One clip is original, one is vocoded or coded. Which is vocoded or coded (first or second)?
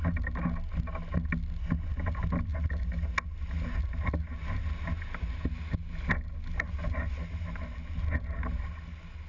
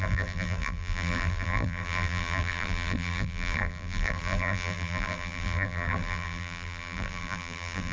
second